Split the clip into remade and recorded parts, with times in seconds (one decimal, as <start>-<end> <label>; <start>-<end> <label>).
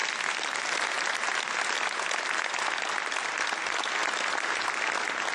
0.0-5.3 recorded